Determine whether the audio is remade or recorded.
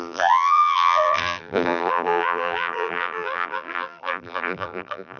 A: remade